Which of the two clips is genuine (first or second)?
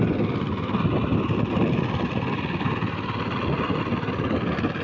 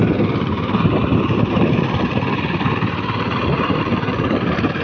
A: first